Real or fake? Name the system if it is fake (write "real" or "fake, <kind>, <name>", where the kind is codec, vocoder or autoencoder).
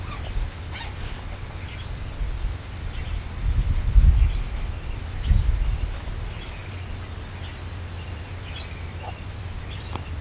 real